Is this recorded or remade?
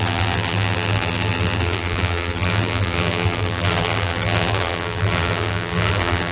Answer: remade